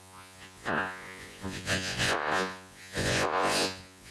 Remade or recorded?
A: remade